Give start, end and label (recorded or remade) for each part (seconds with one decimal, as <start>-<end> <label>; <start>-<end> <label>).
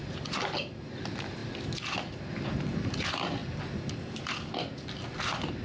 0.0-5.6 recorded